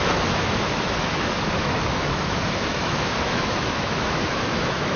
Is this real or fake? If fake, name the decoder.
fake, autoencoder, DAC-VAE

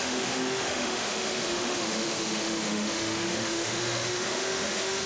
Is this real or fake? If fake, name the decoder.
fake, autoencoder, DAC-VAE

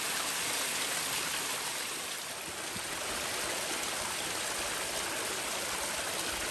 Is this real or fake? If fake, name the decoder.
real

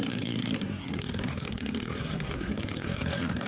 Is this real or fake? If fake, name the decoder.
fake, codec, SNAC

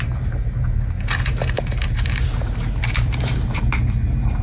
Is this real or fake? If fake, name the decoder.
fake, vocoder, BigVGAN v2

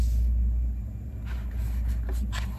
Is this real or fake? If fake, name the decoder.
real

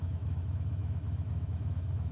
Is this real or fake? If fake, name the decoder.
fake, autoencoder, DAC-VAE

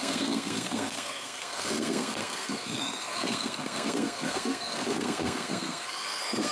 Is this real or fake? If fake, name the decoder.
fake, codec, SNAC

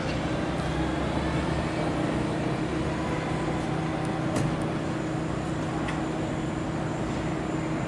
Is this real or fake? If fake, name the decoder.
real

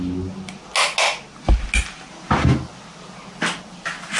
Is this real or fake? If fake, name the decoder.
real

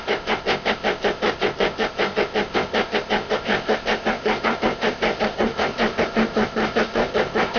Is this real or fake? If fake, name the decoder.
fake, codec, ZipCodec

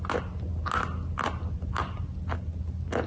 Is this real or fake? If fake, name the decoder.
real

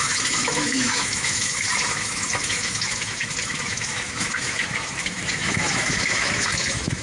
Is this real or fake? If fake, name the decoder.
fake, autoencoder, DAC-VAE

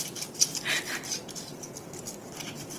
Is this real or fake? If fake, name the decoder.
real